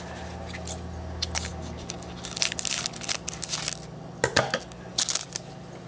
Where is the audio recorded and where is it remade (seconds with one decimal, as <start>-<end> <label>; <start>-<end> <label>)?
0.0-5.9 recorded